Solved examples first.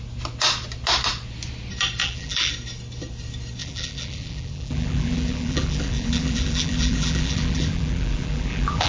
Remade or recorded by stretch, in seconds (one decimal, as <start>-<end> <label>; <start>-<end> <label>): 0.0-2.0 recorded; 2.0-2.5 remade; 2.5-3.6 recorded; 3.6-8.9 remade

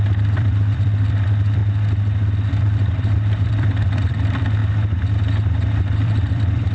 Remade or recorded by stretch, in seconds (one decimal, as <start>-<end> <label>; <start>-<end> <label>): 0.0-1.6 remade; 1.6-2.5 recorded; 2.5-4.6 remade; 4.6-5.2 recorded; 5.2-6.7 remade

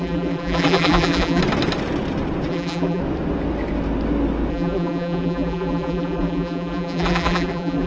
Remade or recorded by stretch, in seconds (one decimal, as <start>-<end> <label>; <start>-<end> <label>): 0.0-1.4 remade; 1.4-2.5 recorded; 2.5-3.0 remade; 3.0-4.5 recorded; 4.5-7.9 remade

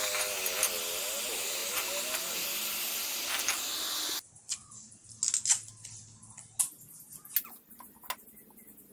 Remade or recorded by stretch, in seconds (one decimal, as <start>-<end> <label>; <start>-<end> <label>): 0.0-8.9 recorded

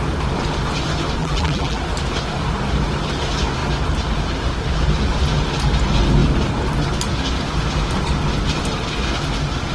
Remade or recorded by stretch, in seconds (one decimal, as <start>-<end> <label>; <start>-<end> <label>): 0.0-1.2 recorded; 1.2-1.8 remade; 1.8-9.7 recorded

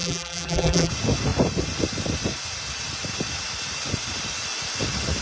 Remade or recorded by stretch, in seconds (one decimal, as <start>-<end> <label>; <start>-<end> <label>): 0.0-0.9 remade; 0.9-5.2 recorded

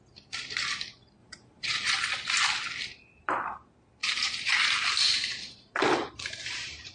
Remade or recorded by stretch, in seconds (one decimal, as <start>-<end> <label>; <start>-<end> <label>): 0.0-1.2 recorded; 1.2-1.9 remade; 1.9-4.0 recorded; 4.0-6.9 remade

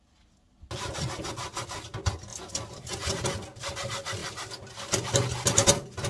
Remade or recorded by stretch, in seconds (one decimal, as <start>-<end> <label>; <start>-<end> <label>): 0.0-2.3 recorded; 2.3-3.1 remade; 3.1-4.2 recorded; 4.2-5.1 remade; 5.1-6.1 recorded